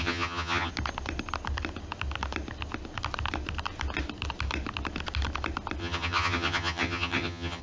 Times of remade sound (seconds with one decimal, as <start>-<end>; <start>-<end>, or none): 0.0-0.7; 5.8-7.6